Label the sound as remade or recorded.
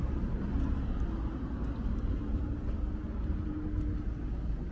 recorded